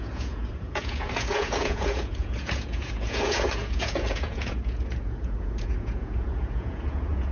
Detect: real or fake fake